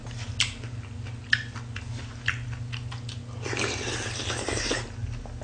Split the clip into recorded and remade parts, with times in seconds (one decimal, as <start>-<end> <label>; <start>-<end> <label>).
0.0-5.4 recorded